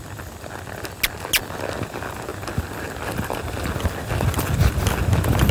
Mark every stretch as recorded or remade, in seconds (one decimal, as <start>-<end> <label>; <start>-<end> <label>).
0.0-5.5 recorded